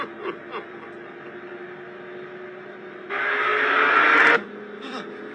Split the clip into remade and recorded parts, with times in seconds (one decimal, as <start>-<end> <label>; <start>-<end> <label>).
0.0-5.3 recorded